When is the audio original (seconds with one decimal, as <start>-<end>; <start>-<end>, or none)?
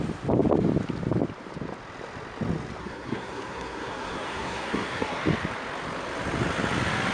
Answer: 0.0-2.8; 5.2-7.1